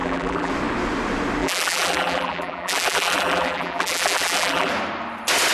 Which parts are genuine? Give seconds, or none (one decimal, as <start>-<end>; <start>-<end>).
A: 0.5-1.4; 4.7-5.5